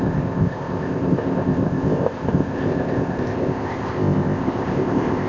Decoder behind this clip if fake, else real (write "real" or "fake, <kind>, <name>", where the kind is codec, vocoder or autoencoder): fake, codec, ZipCodec